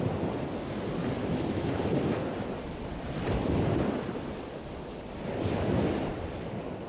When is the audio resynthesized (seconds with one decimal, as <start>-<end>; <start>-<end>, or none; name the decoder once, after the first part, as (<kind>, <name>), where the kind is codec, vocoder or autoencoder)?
1.2-1.8 (autoencoder, DAC-VAE)